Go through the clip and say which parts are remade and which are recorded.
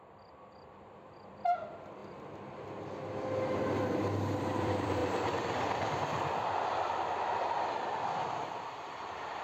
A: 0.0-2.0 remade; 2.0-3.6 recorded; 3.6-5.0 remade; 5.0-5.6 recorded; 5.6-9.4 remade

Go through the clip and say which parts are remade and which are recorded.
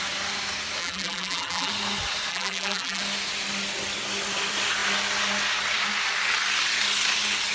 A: 0.0-0.8 recorded; 0.8-1.7 remade; 1.7-2.3 recorded; 2.3-3.0 remade; 3.0-7.5 recorded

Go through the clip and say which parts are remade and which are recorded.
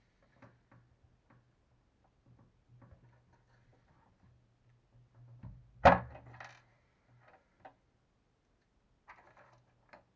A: 0.0-10.2 recorded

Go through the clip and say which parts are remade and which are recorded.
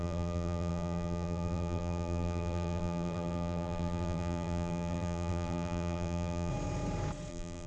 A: 0.0-6.5 remade; 6.5-7.3 recorded; 7.3-7.7 remade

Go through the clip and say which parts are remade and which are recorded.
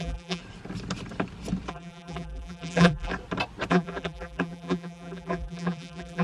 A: 0.0-0.4 remade; 0.4-1.7 recorded; 1.7-3.1 remade; 3.1-3.7 recorded; 3.7-6.2 remade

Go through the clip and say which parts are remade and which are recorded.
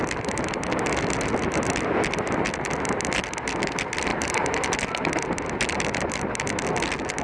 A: 0.0-4.1 recorded; 4.1-4.8 remade; 4.8-7.2 recorded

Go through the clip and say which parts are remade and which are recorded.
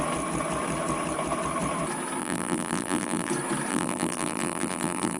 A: 0.0-2.2 recorded; 2.2-3.3 remade; 3.3-3.7 recorded; 3.7-5.2 remade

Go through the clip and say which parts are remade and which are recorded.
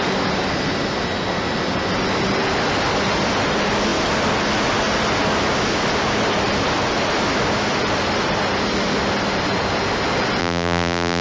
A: 0.0-10.4 recorded; 10.4-11.2 remade